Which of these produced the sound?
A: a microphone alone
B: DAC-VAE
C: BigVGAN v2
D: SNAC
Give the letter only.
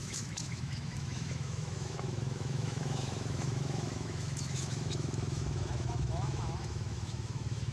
B